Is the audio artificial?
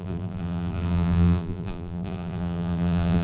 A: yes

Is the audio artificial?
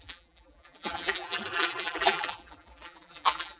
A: yes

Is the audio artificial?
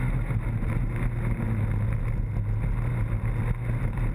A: no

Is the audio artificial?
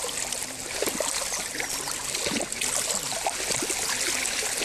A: no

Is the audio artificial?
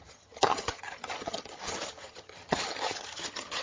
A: yes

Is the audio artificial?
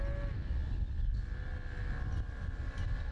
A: no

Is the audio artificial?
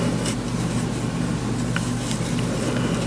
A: no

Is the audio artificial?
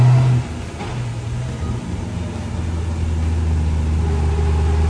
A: no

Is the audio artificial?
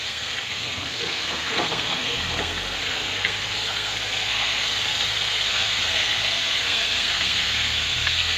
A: yes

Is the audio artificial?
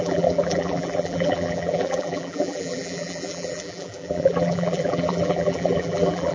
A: yes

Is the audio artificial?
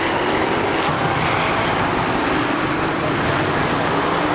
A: no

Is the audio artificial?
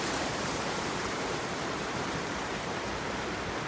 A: yes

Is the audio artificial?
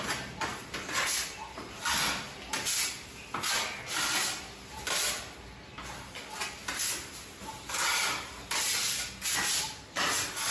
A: no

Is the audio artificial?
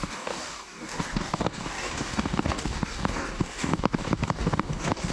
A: yes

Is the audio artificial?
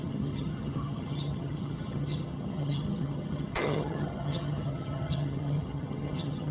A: yes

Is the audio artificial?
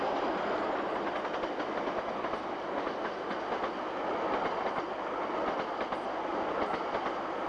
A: no